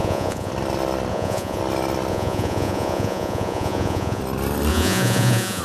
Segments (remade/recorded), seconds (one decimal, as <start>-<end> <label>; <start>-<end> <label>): 0.0-0.5 remade; 0.5-1.1 recorded; 1.1-1.6 remade; 1.6-2.1 recorded; 2.1-4.2 remade; 4.2-4.7 recorded; 4.7-5.6 remade